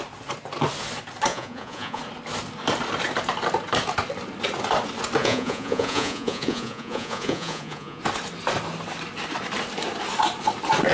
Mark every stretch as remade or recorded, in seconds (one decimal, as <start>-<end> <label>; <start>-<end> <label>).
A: 0.0-1.3 recorded; 1.3-2.0 remade; 2.0-5.2 recorded; 5.2-8.0 remade; 8.0-10.9 recorded